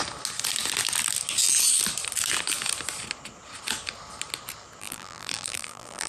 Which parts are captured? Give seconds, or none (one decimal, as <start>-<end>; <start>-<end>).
0.0-4.8